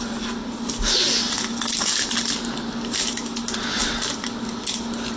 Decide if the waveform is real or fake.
real